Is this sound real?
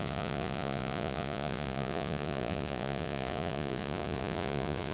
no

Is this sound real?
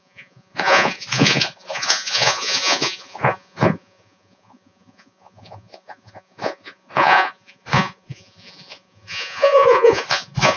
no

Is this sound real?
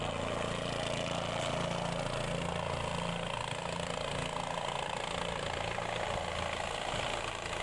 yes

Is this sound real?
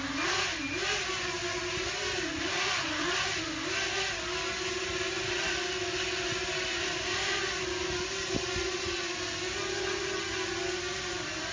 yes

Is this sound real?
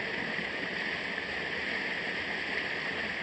yes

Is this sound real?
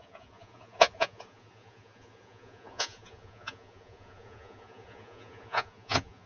no